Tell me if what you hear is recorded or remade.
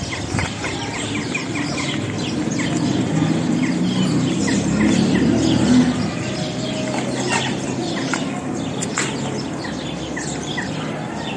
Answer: recorded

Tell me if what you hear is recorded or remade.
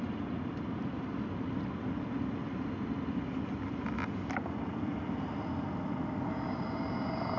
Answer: recorded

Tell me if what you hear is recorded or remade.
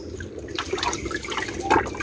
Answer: recorded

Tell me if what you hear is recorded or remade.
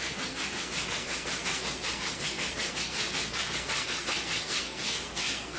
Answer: remade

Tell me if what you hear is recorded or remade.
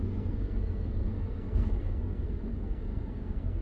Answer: remade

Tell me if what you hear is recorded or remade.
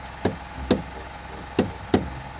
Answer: recorded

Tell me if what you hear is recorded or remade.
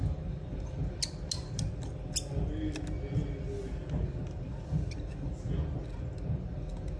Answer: recorded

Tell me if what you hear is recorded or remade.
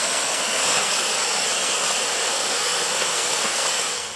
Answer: remade